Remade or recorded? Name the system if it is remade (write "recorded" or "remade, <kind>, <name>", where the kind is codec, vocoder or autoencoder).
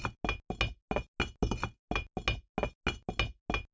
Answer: recorded